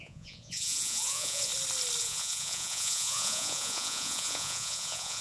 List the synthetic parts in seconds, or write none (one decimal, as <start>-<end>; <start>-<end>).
0.0-1.5; 2.0-5.2